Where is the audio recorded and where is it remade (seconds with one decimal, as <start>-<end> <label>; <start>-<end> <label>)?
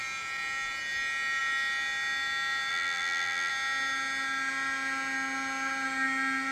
0.0-2.7 recorded; 2.7-3.5 remade; 3.5-6.5 recorded